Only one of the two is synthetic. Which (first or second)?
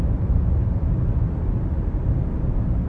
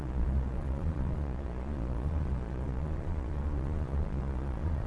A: second